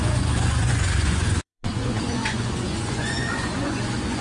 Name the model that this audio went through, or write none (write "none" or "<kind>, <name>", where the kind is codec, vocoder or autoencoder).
vocoder, Vocos